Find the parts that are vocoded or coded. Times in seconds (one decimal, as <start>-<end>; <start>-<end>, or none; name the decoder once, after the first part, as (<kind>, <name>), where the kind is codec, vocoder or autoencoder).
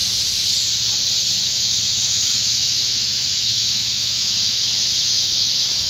1.4-5.9 (autoencoder, DAC-VAE)